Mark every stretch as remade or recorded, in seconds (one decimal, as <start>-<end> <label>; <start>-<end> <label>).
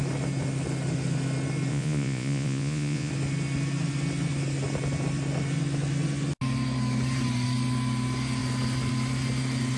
0.0-1.7 recorded; 1.7-3.1 remade; 3.1-9.8 recorded